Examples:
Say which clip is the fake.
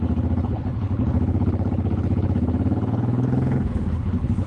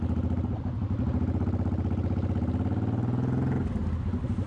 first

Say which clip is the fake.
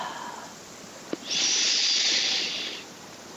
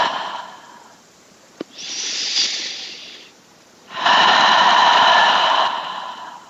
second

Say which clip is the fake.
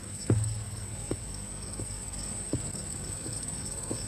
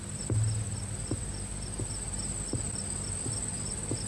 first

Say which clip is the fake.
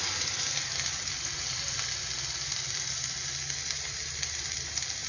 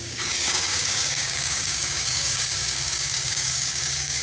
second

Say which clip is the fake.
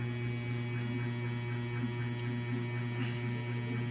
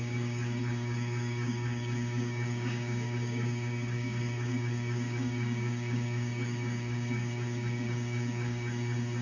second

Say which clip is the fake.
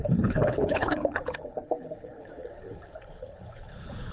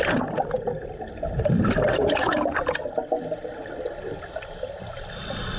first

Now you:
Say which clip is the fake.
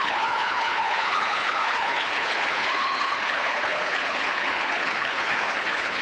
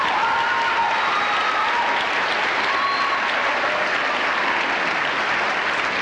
first